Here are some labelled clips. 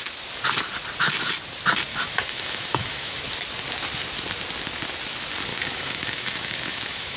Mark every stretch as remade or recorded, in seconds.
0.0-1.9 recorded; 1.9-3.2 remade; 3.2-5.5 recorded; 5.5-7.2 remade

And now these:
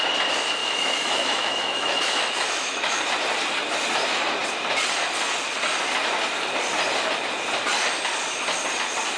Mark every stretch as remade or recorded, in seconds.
0.0-0.6 recorded; 0.6-3.0 remade; 3.0-9.2 recorded

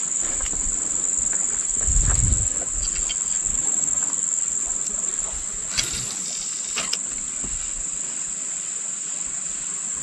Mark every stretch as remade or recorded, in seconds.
0.0-3.5 recorded; 3.5-4.0 remade; 4.0-10.0 recorded

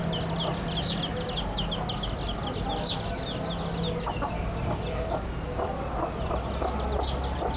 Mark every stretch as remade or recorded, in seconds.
0.0-7.6 recorded

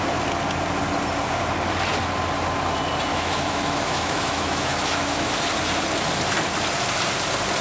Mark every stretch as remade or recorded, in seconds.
0.0-3.1 recorded; 3.1-5.3 remade; 5.3-7.6 recorded

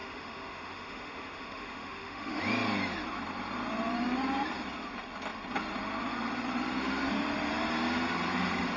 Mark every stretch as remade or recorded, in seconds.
0.0-2.4 remade; 2.4-8.8 recorded

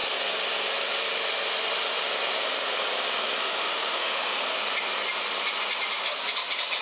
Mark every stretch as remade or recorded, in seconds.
0.0-3.4 recorded; 3.4-4.3 remade; 4.3-6.8 recorded

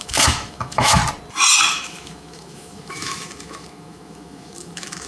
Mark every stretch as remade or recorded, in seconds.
0.0-1.0 remade; 1.0-1.7 recorded; 1.7-5.1 remade